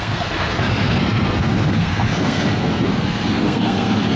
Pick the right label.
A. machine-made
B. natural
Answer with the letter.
A